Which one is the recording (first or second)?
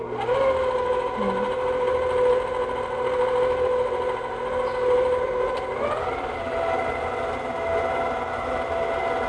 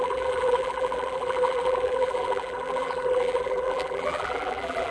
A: first